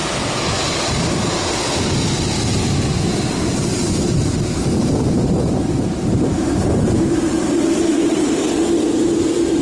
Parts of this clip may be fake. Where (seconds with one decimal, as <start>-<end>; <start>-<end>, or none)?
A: 0.0-1.4; 3.7-8.5